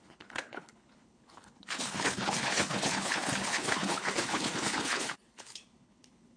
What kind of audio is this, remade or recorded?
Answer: remade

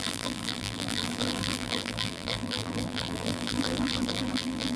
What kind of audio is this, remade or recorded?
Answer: remade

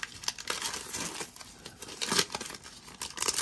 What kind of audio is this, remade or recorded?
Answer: recorded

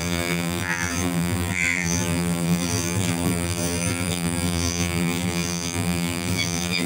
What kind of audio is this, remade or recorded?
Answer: remade